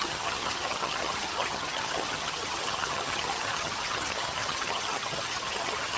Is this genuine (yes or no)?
no